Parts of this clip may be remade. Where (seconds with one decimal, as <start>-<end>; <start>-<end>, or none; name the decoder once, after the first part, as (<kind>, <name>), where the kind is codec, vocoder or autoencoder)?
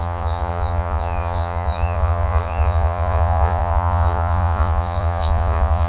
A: 0.0-5.9 (vocoder, Vocos)